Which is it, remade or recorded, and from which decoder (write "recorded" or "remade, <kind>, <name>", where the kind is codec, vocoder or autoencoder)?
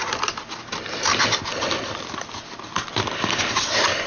recorded